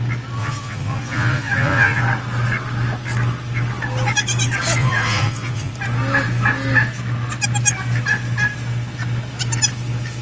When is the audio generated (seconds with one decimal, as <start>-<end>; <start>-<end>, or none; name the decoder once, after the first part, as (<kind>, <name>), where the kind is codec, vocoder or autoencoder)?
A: 0.4-2.0 (vocoder, Vocos); 4.8-5.7